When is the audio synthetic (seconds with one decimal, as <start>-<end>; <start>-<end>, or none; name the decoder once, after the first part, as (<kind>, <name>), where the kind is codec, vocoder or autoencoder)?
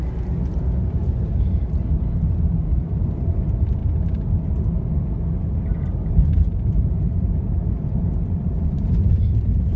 2.4-3.8 (vocoder, BigVGAN v2); 6.0-9.8